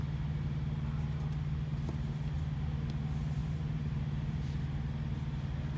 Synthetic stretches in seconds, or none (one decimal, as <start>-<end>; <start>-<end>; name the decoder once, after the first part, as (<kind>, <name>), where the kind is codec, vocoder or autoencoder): 3.4-4.6 (vocoder, BigVGAN v2)